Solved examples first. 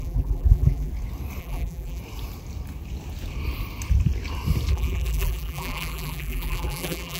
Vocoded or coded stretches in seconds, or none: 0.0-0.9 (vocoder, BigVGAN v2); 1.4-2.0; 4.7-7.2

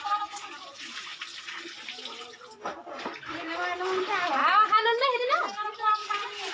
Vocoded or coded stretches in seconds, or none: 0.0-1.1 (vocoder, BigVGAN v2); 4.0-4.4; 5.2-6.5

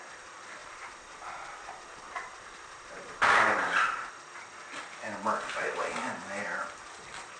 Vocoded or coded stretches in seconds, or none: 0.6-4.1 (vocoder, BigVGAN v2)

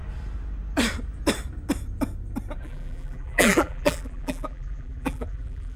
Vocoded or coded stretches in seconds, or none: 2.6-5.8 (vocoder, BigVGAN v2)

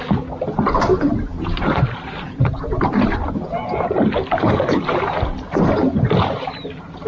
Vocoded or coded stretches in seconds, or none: 0.9-3.3 (vocoder, BigVGAN v2)

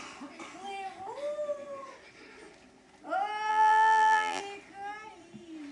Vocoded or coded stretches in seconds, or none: 3.5-4.4 (vocoder, BigVGAN v2)